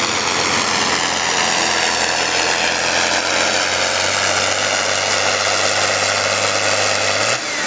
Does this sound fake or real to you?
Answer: real